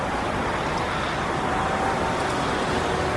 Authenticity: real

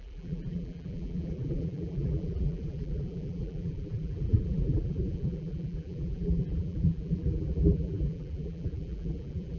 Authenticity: fake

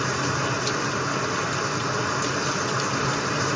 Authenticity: real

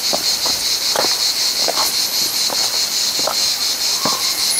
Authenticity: real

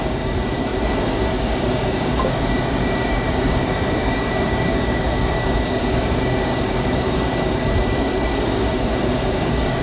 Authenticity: fake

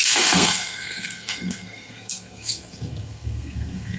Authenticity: fake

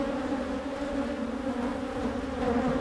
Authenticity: real